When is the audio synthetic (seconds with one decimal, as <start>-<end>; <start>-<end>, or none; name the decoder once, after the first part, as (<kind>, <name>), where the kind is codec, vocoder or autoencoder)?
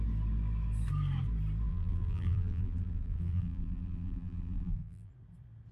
1.7-5.1 (vocoder, BigVGAN v2)